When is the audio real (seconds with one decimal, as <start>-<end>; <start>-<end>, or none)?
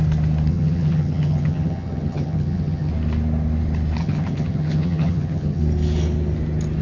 0.0-0.5; 2.9-4.0; 5.6-6.8